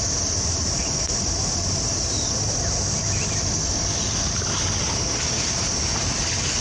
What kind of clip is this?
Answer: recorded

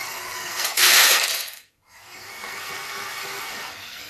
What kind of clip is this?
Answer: remade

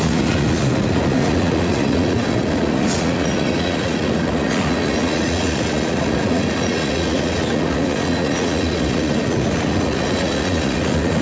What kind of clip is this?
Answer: remade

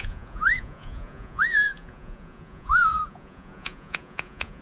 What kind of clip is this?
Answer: remade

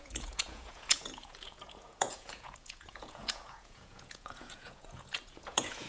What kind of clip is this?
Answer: remade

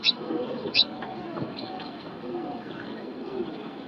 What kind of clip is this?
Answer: remade